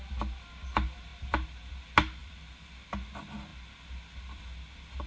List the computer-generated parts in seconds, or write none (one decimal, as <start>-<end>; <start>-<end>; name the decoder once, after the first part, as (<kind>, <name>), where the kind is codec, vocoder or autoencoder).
none